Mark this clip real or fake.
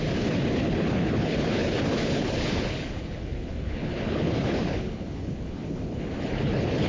fake